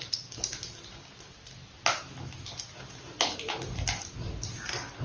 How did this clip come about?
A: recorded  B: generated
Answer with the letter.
A